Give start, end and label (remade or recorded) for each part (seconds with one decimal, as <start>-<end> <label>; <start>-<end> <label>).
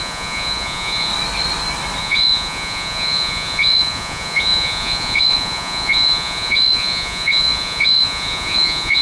0.0-1.1 remade; 1.1-2.0 recorded; 2.0-9.0 remade